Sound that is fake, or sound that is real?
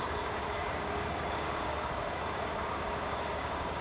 fake